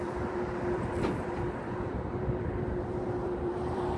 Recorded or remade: remade